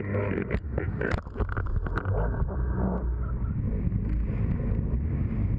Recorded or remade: recorded